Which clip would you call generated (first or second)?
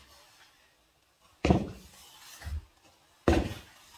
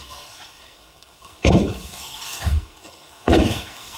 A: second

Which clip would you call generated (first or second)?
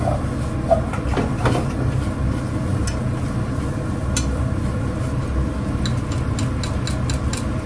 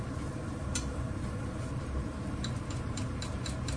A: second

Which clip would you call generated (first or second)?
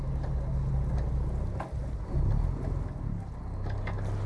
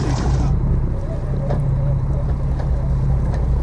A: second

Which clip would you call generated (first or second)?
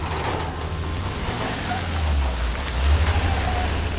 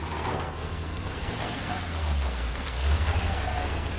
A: second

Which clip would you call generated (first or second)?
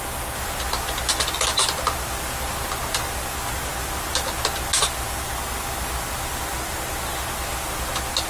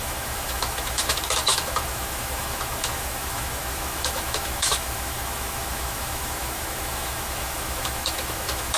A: second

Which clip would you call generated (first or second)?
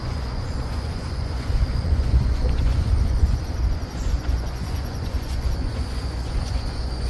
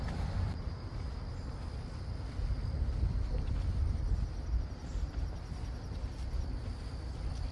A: first